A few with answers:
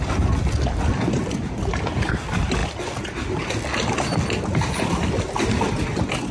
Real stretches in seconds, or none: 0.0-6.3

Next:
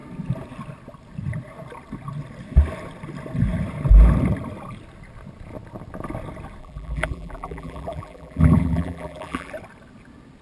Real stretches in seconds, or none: 0.0-6.6; 9.5-10.4

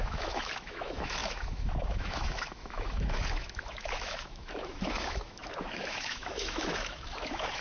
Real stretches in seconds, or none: none

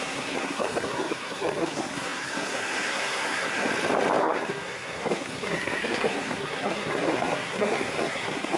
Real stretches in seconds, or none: 3.7-4.2

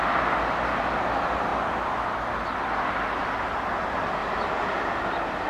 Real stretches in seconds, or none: 0.0-4.2; 5.0-5.5

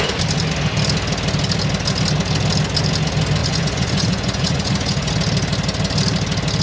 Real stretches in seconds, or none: 0.0-3.4; 5.1-6.6

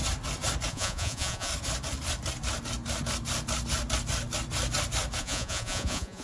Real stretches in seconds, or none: 0.0-0.7; 1.5-5.2